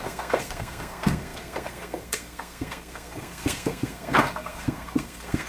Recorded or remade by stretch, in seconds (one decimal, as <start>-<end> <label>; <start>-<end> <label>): 0.0-5.5 remade